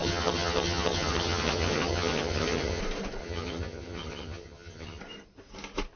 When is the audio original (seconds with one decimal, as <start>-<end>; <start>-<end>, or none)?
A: 2.8-3.2; 5.0-6.0